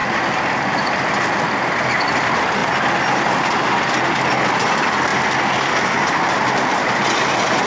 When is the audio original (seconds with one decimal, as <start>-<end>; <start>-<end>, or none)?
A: 0.0-1.8; 2.6-4.3